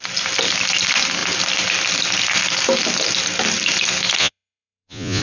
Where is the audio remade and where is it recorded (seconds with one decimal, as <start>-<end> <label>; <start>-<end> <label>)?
0.0-4.2 recorded; 4.2-5.2 remade